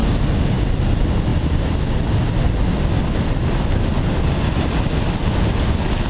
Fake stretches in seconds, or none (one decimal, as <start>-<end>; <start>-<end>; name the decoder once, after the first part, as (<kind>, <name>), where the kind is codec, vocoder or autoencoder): none